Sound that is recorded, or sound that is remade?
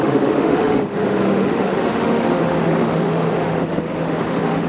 remade